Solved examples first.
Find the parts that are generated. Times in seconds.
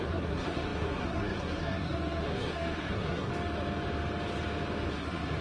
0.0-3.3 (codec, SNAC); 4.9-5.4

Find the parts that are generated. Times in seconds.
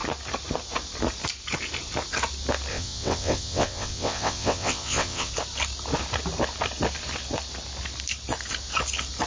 2.7-5.3 (vocoder, WaveNeXt)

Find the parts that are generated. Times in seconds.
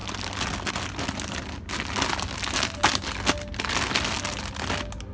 none